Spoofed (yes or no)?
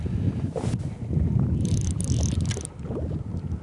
no